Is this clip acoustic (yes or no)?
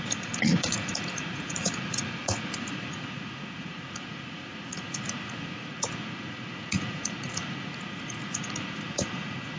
no